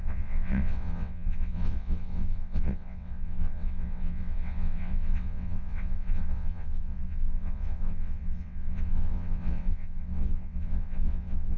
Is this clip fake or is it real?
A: fake